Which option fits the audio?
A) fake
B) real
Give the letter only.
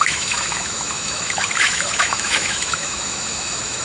A